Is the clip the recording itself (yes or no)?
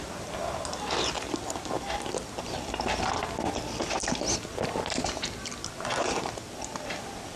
yes